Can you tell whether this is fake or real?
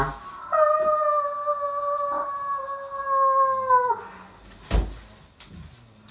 real